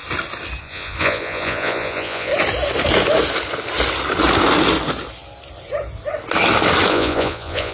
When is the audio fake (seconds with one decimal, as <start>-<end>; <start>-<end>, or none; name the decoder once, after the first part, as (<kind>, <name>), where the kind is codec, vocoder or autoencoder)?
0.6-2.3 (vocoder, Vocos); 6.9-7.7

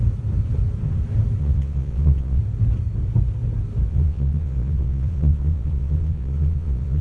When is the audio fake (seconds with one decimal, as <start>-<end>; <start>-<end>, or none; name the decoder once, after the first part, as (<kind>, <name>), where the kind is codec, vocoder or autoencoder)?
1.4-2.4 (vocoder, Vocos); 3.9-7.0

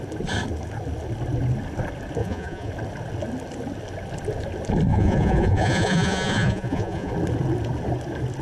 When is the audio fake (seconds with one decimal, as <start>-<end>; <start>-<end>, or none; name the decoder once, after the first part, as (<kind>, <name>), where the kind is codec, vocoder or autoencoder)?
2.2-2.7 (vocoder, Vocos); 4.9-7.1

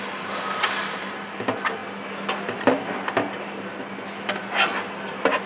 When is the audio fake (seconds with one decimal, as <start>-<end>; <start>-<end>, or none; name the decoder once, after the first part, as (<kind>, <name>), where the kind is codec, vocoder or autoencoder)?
none